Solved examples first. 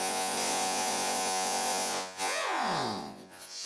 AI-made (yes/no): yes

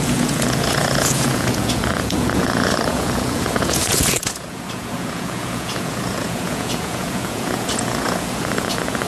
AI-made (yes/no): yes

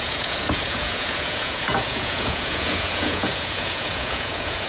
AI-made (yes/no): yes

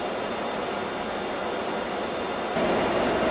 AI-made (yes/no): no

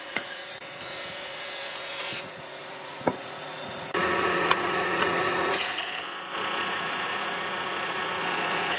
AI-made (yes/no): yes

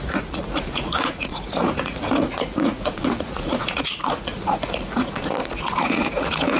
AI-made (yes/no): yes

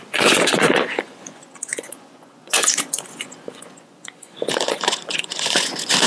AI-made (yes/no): yes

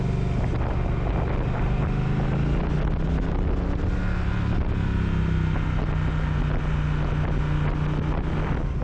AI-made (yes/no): no